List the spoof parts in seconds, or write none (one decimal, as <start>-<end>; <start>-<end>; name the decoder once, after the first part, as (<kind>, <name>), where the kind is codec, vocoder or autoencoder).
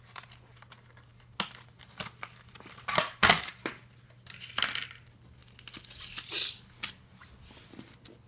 none